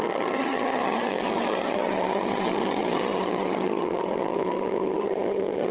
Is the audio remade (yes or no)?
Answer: yes